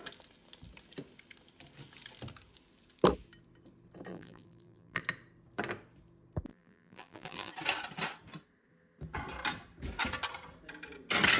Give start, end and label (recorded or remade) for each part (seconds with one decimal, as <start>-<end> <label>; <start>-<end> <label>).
0.0-4.1 recorded; 4.1-5.0 remade; 5.0-6.5 recorded; 6.5-7.5 remade; 7.5-11.4 recorded